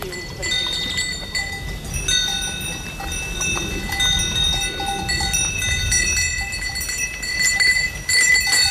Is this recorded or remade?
recorded